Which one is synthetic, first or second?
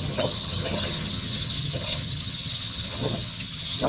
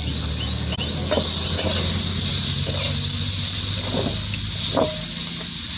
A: first